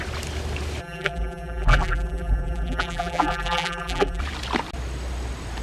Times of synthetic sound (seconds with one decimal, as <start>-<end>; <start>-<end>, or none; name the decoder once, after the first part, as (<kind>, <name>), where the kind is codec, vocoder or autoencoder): 0.8-4.2 (vocoder, BigVGAN v2)